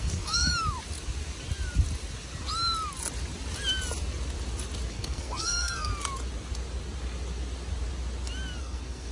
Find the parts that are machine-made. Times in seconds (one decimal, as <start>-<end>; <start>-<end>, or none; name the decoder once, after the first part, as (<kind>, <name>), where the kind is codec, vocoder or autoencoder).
0.0-0.5 (codec, SNAC); 4.9-5.9; 8.6-9.1